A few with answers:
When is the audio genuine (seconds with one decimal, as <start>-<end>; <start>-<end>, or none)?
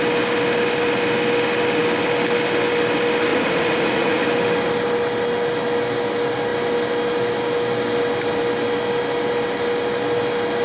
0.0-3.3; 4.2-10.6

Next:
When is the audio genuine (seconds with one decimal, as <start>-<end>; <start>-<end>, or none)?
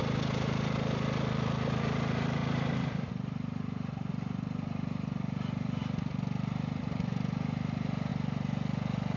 5.8-6.8; 8.1-9.2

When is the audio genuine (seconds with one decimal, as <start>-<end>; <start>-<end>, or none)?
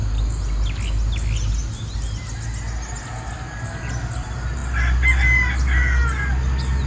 0.0-6.9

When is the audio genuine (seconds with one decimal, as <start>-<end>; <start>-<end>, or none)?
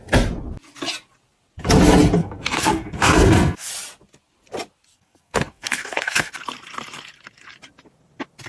0.0-2.2; 3.7-4.9; 6.3-8.5